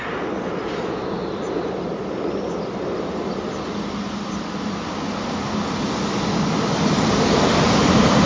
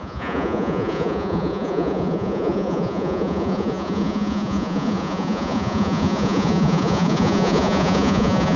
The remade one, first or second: second